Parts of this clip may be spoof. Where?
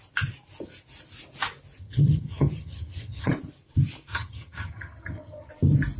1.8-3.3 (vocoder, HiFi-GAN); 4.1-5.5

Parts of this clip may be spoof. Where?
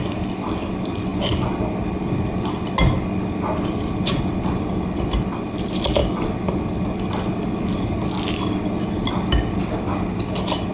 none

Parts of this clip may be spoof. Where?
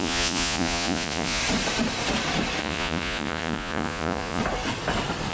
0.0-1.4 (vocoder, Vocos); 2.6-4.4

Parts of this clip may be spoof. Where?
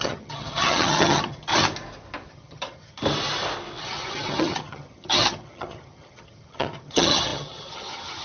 0.0-1.5 (vocoder, HiFi-GAN); 2.3-3.0; 3.8-8.2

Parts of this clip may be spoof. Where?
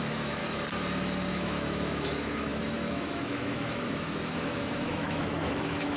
0.0-0.4 (autoencoder, DAC-VAE); 1.3-6.0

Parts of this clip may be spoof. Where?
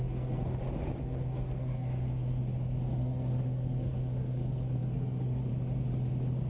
0.0-0.5 (codec, SNAC); 1.0-2.4; 3.0-5.5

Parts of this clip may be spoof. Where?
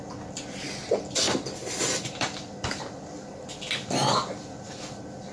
1.6-3.2 (vocoder, BigVGAN v2)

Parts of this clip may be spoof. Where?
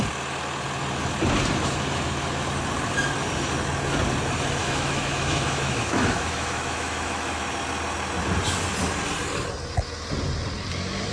4.6-7.4 (autoencoder, DAC-VAE)